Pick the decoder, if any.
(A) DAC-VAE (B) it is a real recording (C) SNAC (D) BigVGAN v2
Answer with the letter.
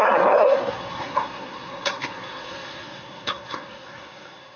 C